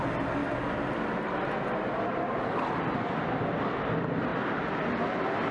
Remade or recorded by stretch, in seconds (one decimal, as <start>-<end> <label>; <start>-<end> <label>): 0.0-5.5 recorded